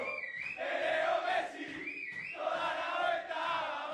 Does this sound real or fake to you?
real